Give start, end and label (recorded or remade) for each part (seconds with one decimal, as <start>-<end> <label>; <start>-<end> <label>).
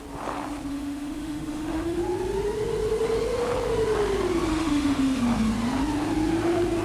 0.0-0.7 recorded; 0.7-2.0 remade; 2.0-4.5 recorded; 4.5-5.2 remade; 5.2-6.8 recorded